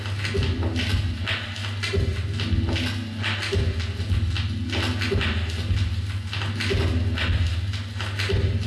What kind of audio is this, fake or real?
real